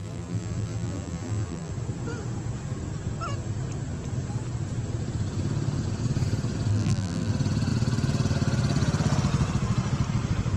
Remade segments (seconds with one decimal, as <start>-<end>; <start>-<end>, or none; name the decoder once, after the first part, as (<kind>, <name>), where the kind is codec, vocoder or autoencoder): 0.0-1.7 (vocoder, BigVGAN v2); 6.7-7.3